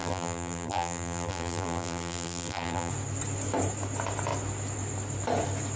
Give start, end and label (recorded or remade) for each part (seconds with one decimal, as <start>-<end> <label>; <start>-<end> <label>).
0.0-2.9 remade; 2.9-5.8 recorded